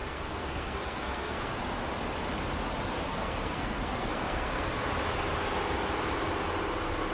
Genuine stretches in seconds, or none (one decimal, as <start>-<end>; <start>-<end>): 1.6-3.1; 4.7-7.1